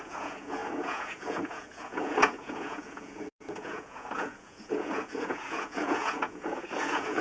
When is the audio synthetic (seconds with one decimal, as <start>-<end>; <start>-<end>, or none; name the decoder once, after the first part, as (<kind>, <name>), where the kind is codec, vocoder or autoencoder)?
0.0-7.2 (vocoder, Vocos)